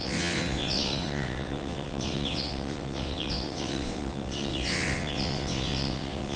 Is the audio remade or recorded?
remade